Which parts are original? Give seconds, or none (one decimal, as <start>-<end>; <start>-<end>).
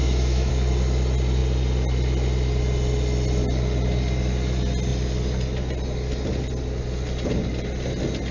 0.5-8.3